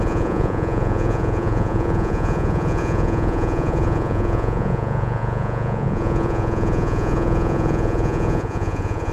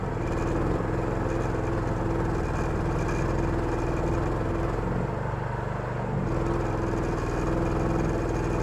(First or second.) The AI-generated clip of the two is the first